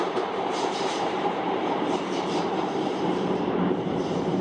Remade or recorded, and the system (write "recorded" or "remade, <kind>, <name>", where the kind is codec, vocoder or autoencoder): remade, vocoder, BigVGAN v2